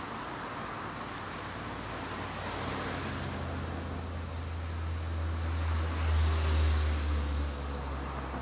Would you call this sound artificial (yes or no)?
no